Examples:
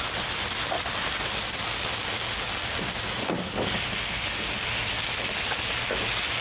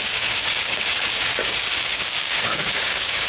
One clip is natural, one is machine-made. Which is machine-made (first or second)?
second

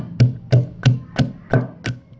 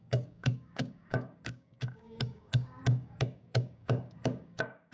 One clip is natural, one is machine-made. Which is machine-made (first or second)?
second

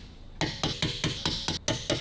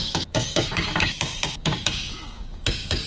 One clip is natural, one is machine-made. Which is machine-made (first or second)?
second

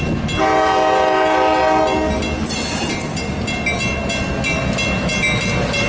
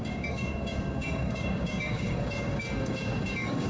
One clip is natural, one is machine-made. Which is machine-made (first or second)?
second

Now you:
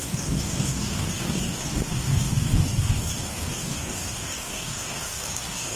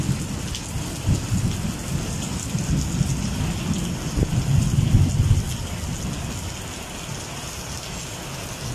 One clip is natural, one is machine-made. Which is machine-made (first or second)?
first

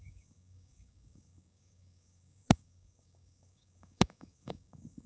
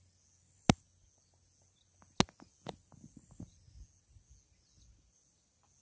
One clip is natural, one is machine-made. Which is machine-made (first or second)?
first